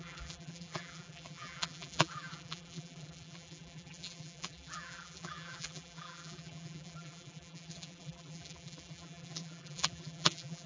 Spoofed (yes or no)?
yes